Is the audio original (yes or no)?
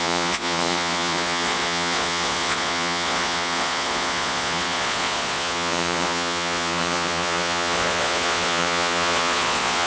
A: no